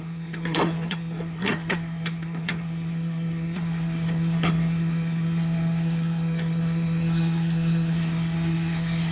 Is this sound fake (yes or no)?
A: yes